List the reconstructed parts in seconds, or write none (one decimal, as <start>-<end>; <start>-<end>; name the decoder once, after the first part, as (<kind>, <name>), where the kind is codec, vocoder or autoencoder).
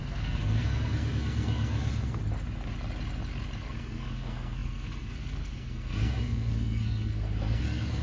0.0-2.2 (codec, SNAC); 3.6-8.0